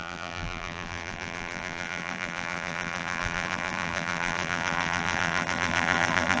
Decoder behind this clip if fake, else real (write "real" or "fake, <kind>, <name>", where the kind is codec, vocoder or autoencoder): fake, vocoder, BigVGAN v2